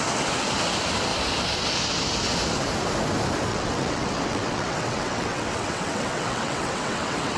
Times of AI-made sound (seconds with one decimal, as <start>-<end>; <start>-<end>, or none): 3.5-7.4